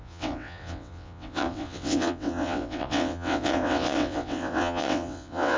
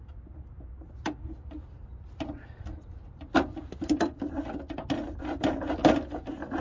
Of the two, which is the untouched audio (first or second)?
second